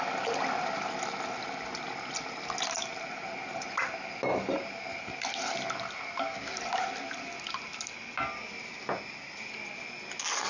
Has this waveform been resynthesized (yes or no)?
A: no